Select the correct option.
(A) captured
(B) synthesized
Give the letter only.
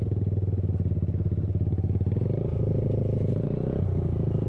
A